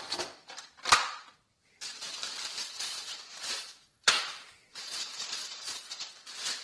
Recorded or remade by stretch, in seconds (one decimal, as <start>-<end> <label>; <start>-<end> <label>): 0.0-2.6 recorded; 2.6-6.1 remade; 6.1-6.6 recorded